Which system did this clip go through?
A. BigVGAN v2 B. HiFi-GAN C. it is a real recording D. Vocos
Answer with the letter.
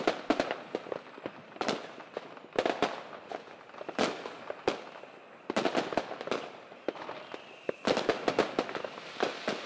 C